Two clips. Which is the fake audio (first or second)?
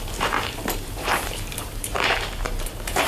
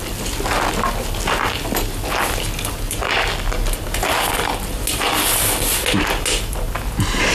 first